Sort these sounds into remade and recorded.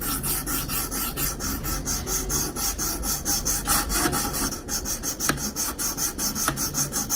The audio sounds recorded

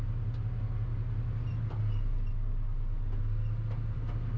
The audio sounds recorded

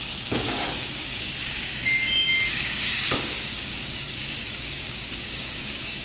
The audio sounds remade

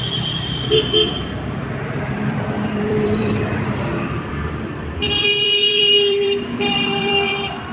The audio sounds remade